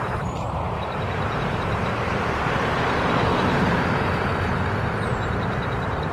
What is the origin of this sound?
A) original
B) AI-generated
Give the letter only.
B